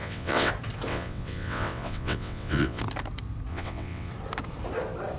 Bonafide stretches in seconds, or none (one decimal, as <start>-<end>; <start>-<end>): 0.5-0.9; 2.8-3.5; 4.1-5.2